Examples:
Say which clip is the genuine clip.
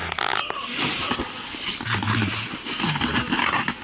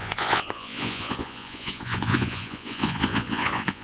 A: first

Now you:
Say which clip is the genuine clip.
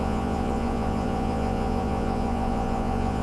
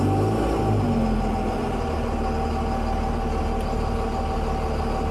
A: second